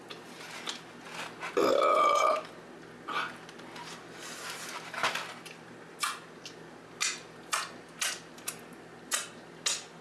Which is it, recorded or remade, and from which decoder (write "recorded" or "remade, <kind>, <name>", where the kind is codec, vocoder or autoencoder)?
recorded